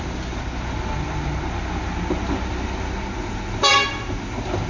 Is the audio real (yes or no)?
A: yes